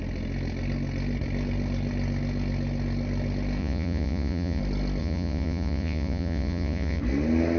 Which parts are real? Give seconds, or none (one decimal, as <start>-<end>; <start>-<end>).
0.0-3.6; 4.6-5.0; 7.0-7.6